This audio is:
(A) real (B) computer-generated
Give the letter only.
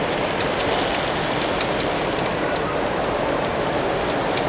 A